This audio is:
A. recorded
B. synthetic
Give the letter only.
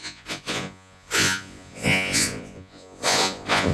B